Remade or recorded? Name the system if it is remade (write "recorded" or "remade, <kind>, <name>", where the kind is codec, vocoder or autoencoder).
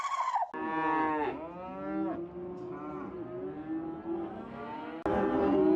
recorded